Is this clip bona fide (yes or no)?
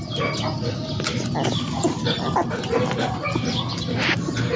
yes